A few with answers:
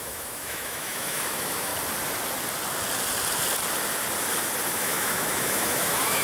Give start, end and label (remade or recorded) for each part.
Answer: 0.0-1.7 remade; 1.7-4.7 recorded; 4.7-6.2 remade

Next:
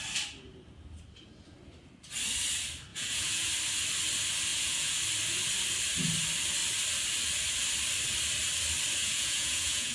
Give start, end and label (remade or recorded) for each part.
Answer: 0.0-2.9 recorded; 2.9-3.5 remade; 3.5-4.5 recorded; 4.5-5.0 remade; 5.0-9.0 recorded; 9.0-9.9 remade

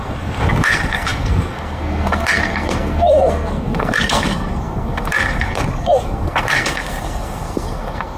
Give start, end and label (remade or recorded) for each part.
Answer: 0.0-8.2 remade

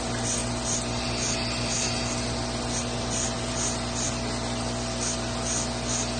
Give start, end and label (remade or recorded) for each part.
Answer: 0.0-6.2 recorded

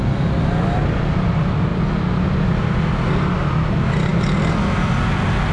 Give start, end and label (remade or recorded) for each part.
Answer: 0.0-5.5 recorded